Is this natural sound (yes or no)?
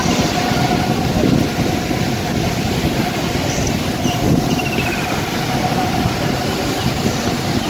yes